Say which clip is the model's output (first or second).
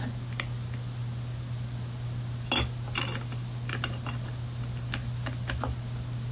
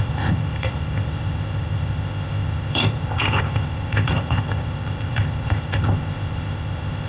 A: second